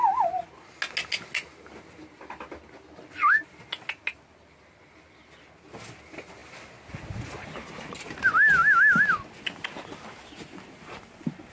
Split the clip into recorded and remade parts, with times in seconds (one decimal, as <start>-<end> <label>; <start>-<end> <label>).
0.0-11.5 recorded